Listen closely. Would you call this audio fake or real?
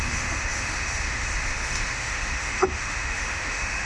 fake